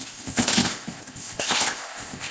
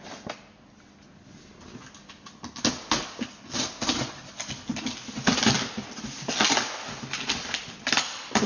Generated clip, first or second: first